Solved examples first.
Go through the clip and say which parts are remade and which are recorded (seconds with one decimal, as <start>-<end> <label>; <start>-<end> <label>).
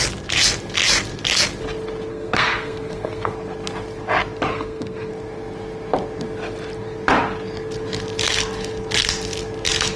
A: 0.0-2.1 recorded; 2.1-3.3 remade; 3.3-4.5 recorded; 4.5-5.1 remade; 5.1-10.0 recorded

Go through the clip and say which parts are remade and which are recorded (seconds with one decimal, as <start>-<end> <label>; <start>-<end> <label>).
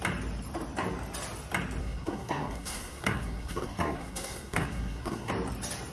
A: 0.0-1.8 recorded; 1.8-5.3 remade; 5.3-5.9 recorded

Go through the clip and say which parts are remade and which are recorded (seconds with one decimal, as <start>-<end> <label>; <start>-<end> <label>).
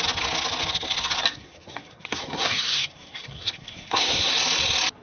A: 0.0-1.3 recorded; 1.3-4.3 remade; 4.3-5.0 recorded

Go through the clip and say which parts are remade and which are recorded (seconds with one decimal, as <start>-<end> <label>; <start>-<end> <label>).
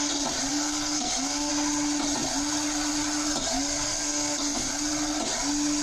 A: 0.0-0.5 recorded; 0.5-1.5 remade; 1.5-3.9 recorded; 3.9-4.7 remade; 4.7-5.8 recorded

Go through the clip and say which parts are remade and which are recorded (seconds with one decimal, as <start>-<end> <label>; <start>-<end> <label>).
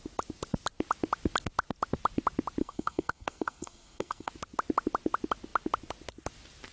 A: 0.0-2.6 recorded; 2.6-4.3 remade; 4.3-6.7 recorded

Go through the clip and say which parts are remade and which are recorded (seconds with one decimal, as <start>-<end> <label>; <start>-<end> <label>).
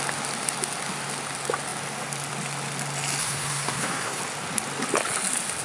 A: 0.0-3.2 recorded; 3.2-4.2 remade; 4.2-5.6 recorded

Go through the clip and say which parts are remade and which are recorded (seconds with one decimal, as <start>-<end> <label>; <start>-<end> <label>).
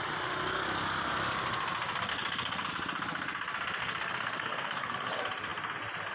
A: 0.0-2.1 recorded; 2.1-2.7 remade; 2.7-3.8 recorded; 3.8-4.9 remade; 4.9-6.1 recorded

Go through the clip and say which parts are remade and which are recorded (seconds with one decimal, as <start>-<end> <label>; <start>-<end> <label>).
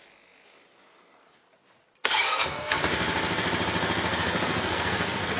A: 0.0-2.0 recorded; 2.0-2.8 remade; 2.8-4.1 recorded; 4.1-5.4 remade